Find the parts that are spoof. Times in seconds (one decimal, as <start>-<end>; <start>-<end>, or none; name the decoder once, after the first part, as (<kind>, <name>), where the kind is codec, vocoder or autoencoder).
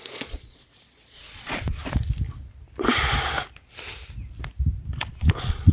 0.0-1.8 (vocoder, Vocos); 5.1-5.7